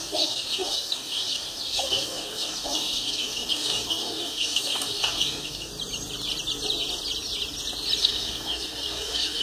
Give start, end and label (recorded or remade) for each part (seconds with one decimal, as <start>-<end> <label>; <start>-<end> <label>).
0.0-5.7 remade; 5.7-8.0 recorded; 8.0-9.4 remade